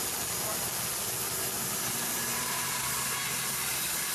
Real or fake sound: real